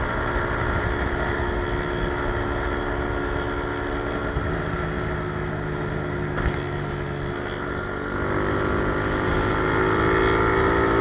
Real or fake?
real